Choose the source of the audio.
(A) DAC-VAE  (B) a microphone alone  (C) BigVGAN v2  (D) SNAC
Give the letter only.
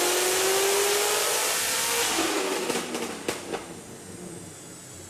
B